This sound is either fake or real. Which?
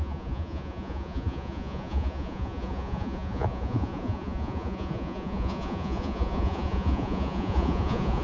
fake